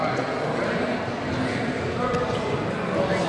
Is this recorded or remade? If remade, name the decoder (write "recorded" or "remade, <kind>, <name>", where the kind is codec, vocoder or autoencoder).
recorded